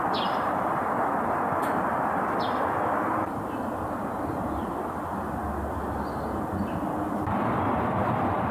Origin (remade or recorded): recorded